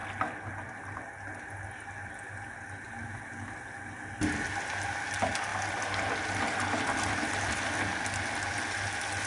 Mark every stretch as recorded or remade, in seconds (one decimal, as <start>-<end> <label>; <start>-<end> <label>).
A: 0.0-9.3 recorded